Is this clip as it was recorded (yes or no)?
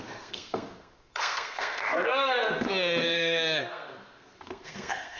no